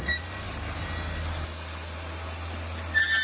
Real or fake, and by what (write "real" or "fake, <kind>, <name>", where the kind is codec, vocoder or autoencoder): real